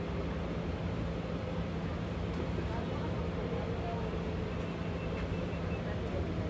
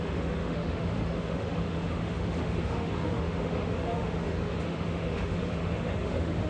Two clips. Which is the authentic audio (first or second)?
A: first